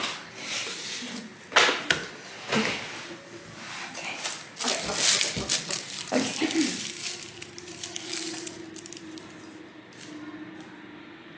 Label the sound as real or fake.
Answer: real